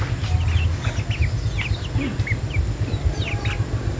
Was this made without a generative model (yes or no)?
yes